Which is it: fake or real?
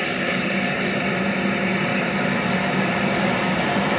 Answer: fake